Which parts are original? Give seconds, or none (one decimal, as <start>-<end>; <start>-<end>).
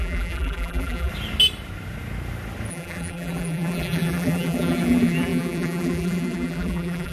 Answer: 1.1-2.7